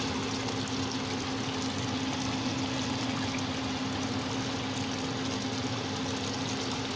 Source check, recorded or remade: recorded